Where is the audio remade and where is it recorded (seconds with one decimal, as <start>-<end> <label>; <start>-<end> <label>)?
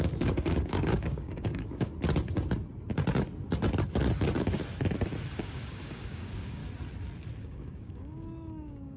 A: 0.0-1.9 remade; 1.9-5.4 recorded; 5.4-6.6 remade; 6.6-7.4 recorded; 7.4-9.0 remade